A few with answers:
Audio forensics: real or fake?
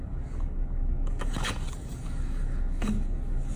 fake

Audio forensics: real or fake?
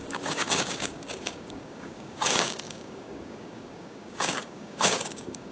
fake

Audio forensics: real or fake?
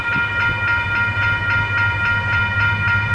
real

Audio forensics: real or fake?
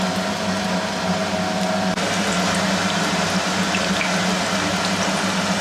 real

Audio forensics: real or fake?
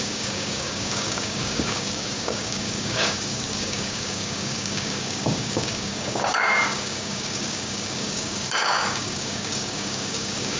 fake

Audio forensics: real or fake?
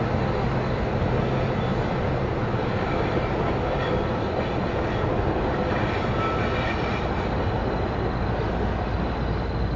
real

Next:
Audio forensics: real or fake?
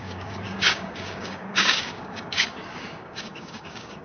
fake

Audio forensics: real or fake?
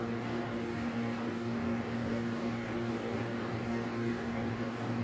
fake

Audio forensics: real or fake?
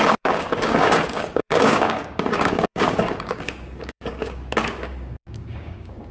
fake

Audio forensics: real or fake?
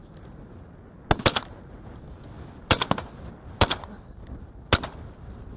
real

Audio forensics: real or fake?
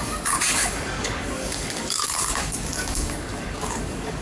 fake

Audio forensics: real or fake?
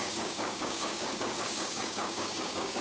fake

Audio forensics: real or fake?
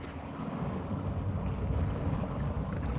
fake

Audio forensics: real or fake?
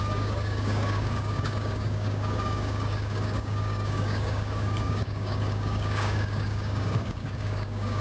fake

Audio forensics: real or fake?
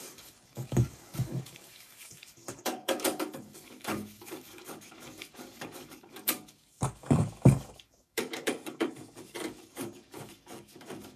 fake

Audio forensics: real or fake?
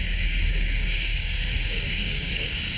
fake